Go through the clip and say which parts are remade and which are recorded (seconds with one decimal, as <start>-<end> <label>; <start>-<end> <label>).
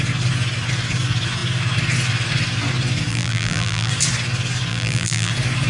0.0-3.1 recorded; 3.1-3.9 remade; 3.9-4.7 recorded; 4.7-5.3 remade; 5.3-5.7 recorded